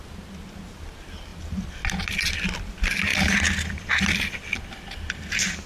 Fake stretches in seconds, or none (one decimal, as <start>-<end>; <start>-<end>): none